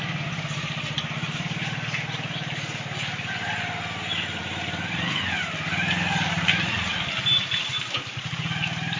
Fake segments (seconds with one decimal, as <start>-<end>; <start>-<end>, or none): none

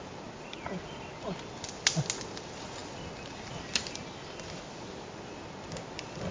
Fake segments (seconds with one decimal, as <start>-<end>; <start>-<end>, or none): none

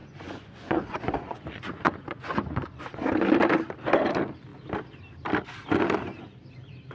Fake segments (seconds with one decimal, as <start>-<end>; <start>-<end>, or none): 0.0-2.8

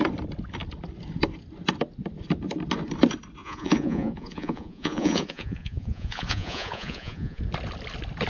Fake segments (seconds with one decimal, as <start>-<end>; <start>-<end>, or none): 3.4-7.4

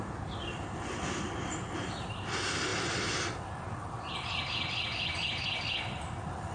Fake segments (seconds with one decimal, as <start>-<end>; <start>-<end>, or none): none